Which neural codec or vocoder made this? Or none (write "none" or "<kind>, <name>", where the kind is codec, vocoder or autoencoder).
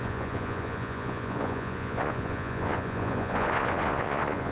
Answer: vocoder, Vocos